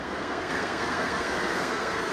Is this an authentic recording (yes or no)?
no